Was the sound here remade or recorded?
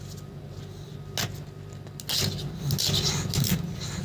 recorded